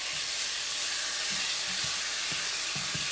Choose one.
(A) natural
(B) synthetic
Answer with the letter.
A